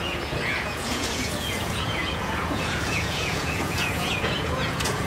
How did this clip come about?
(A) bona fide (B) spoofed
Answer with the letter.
B